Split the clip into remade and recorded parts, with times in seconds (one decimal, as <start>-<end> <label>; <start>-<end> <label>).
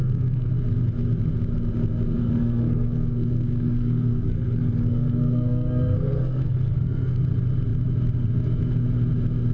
0.0-0.5 remade; 0.5-2.2 recorded; 2.2-7.2 remade; 7.2-9.5 recorded